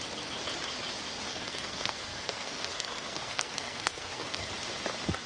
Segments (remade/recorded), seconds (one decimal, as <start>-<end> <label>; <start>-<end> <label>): 0.0-1.3 recorded; 1.3-4.5 remade; 4.5-5.3 recorded